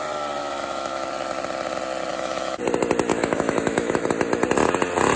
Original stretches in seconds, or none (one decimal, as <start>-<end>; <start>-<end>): 0.0-0.4; 1.1-2.1; 2.6-3.1; 4.0-5.2